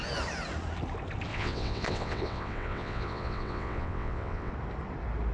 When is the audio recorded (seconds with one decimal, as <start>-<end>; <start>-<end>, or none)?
0.0-1.3; 4.5-5.3